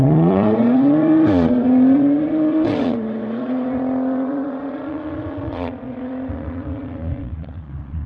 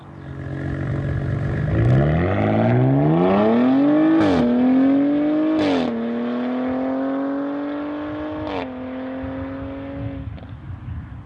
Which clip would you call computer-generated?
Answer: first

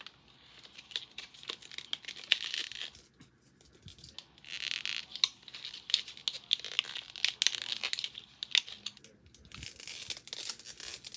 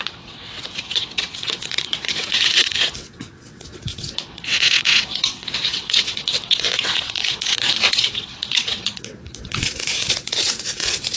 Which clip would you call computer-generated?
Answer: second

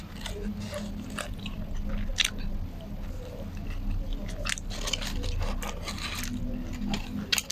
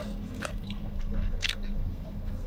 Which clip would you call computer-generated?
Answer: second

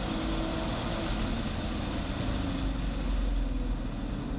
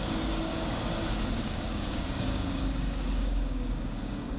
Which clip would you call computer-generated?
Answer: second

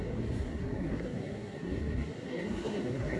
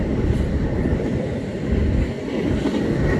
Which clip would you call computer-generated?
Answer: first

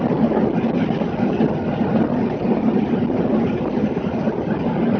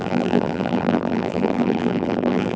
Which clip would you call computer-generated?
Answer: second